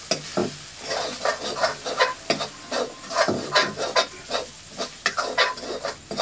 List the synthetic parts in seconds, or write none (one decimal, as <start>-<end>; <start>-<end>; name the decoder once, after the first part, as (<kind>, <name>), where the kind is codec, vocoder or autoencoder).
none